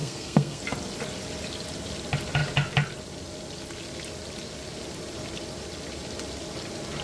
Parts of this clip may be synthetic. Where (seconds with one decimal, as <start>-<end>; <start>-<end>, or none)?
0.0-0.6